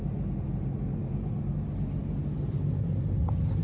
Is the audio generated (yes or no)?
no